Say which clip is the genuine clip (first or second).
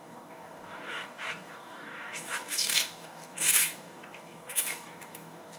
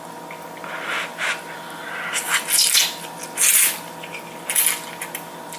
second